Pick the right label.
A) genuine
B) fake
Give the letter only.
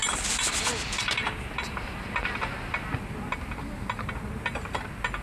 A